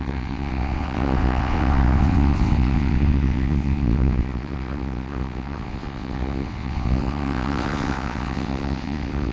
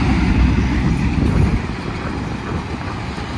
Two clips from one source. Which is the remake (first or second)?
first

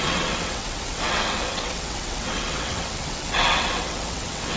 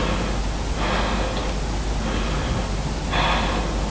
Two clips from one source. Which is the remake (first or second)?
first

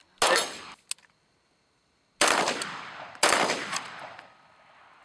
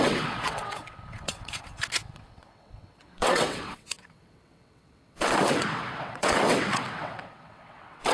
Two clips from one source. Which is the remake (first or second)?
second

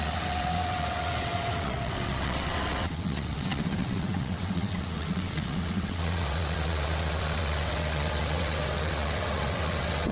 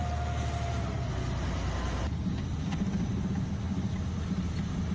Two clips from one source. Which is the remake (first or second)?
first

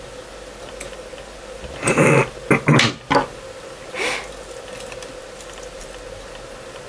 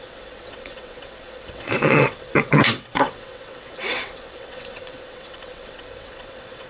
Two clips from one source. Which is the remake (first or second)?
second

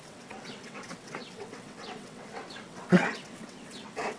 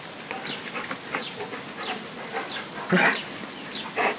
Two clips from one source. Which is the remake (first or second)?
first